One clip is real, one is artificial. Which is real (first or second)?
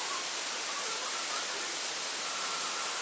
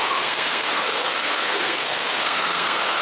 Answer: first